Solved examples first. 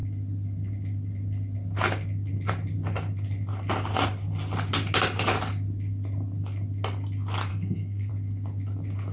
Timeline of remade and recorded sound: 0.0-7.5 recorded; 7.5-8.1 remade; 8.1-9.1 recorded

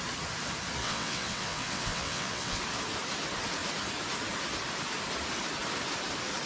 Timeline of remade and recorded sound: 0.0-0.8 recorded; 0.8-2.6 remade; 2.6-6.5 recorded

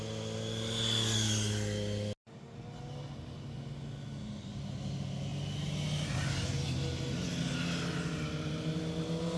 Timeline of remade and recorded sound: 0.0-9.4 recorded

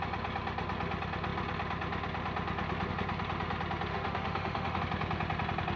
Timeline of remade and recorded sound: 0.0-3.9 recorded; 3.9-4.8 remade; 4.8-5.8 recorded

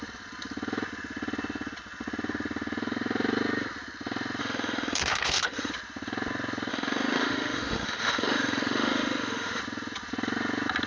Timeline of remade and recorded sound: 0.0-4.4 recorded; 4.4-5.7 remade; 5.7-6.7 recorded; 6.7-9.6 remade; 9.6-10.9 recorded

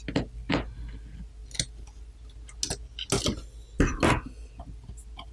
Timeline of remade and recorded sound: 0.0-5.3 recorded